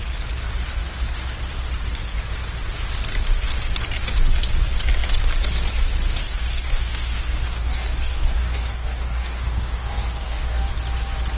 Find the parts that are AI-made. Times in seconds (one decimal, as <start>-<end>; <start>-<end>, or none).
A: 6.2-10.7